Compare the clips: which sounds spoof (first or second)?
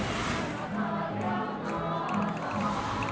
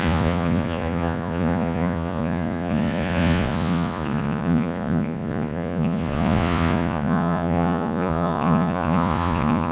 second